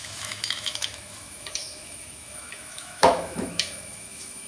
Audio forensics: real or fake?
fake